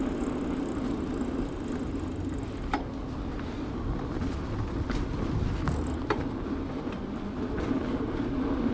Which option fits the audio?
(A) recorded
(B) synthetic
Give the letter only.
A